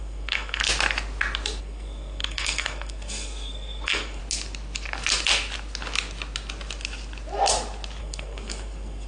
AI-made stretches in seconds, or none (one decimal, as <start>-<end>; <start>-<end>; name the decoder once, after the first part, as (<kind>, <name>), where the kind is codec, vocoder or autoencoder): 0.0-0.6 (codec, SNAC); 1.6-4.2; 8.0-9.1